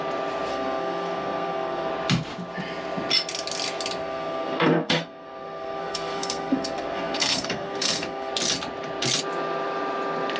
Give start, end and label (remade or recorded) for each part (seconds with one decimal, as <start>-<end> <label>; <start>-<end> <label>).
0.0-0.5 recorded; 0.5-1.9 remade; 1.9-4.0 recorded; 4.0-8.3 remade; 8.3-10.4 recorded